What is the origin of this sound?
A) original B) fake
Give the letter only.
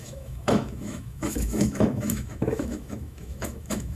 B